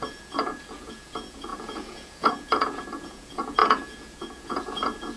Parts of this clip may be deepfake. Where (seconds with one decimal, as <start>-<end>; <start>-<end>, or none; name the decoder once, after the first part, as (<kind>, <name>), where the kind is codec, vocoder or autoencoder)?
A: 0.0-5.2 (vocoder, Vocos)